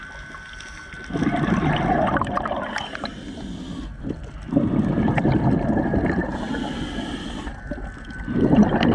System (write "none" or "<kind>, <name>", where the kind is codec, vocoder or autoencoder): none